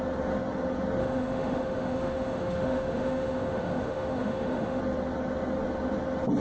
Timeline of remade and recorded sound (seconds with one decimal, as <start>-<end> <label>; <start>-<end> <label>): 0.0-1.0 recorded; 1.0-4.8 remade; 4.8-6.4 recorded